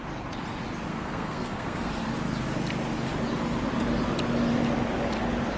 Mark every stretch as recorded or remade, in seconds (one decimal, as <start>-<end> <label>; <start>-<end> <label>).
0.0-0.9 recorded; 0.9-1.9 remade; 1.9-5.6 recorded